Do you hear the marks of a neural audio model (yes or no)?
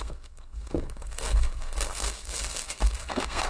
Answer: yes